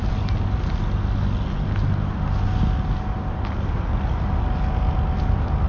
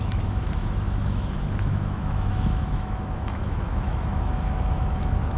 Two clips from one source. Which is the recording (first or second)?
first